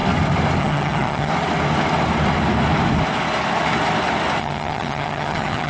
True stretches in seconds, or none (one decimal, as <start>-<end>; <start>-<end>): 0.0-0.6; 1.3-4.4